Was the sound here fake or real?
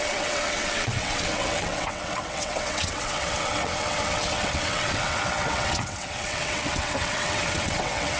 fake